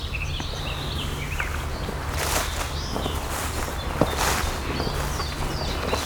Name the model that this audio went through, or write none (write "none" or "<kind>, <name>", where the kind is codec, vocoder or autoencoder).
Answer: none